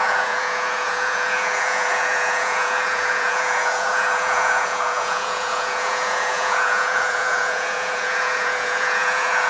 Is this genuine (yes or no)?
no